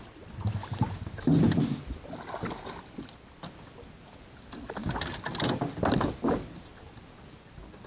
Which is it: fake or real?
real